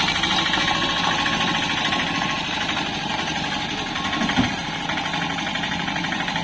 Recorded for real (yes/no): yes